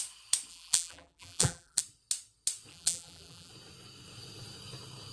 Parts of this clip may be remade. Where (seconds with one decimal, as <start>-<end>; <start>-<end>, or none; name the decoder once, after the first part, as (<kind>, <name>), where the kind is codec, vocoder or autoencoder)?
0.5-1.8 (vocoder, BigVGAN v2); 2.7-3.5